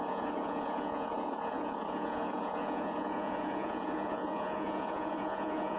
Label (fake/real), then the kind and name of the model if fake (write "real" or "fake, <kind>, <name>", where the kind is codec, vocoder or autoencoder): fake, vocoder, Vocos